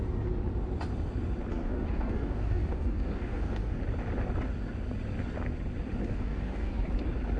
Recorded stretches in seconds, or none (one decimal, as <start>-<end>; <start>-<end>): 0.0-1.5; 3.8-6.0; 6.9-7.4